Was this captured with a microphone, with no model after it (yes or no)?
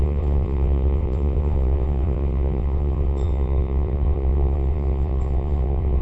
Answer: no